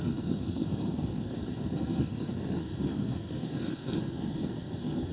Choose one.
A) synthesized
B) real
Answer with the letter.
A